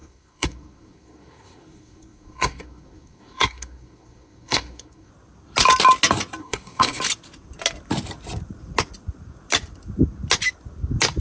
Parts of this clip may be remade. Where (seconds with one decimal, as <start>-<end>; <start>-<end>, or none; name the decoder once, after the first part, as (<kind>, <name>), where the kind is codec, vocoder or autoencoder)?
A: 0.0-5.1 (codec, SNAC); 6.4-7.0